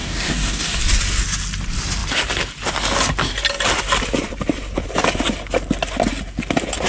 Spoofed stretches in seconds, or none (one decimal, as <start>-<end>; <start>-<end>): 0.0-0.8